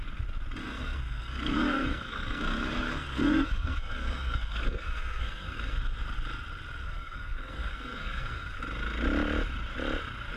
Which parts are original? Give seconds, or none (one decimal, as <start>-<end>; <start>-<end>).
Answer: 0.0-0.6; 5.8-6.8; 8.6-10.4